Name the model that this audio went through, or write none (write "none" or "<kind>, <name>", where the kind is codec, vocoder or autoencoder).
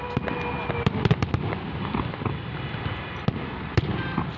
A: none